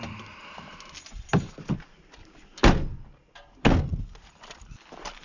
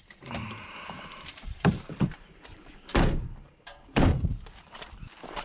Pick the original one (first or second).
first